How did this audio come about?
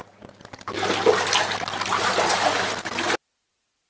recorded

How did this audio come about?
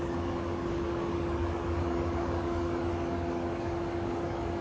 remade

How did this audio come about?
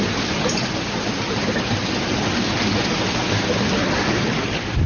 recorded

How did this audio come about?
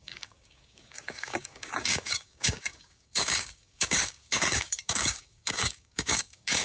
remade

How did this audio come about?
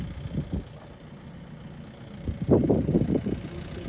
recorded